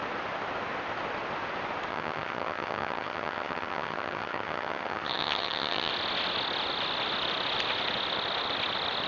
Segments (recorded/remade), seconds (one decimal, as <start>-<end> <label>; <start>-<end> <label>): 0.0-1.9 recorded; 1.9-5.9 remade; 5.9-9.1 recorded